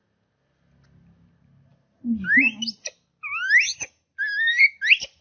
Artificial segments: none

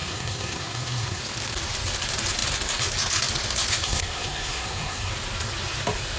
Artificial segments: 0.0-1.2 (codec, SNAC); 3.8-5.1

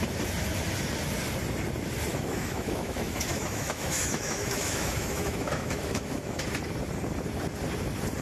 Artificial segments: 2.1-6.4 (autoencoder, DAC-VAE)

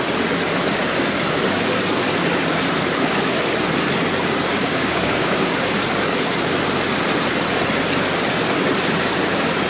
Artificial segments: 4.5-5.5 (codec, DAC)

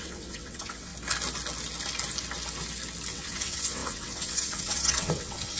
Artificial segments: 0.0-0.9 (vocoder, WaveNeXt); 3.1-5.6

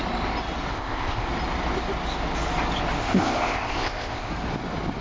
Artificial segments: 0.7-1.3 (codec, ZipCodec); 3.0-4.3

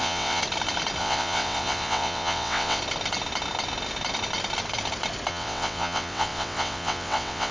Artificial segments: 0.0-0.4 (vocoder, WaveNeXt); 1.0-2.8; 5.3-7.5

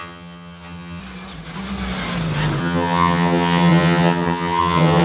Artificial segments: 0.0-1.0 (vocoder, HiFi-GAN); 2.6-5.0